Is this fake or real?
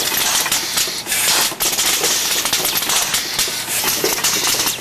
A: real